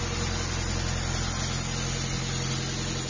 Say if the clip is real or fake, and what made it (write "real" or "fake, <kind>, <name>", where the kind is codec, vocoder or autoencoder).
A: real